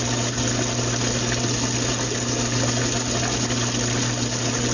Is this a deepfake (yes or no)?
no